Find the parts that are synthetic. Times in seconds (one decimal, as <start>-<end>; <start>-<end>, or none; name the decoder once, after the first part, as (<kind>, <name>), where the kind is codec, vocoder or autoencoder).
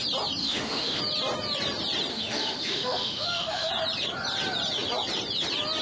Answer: 0.4-1.0 (autoencoder, DAC-VAE); 2.1-3.7